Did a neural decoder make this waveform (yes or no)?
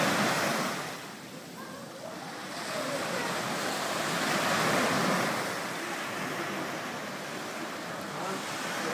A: no